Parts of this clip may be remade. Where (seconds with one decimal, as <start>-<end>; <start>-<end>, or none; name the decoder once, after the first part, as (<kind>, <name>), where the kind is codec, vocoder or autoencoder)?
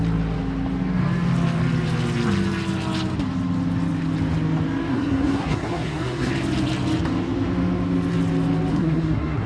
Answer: 4.9-6.3 (codec, SNAC); 8.7-9.5